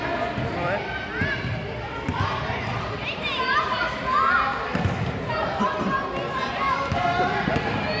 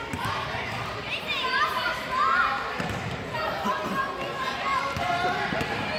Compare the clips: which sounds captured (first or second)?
first